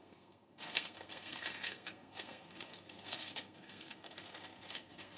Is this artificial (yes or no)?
yes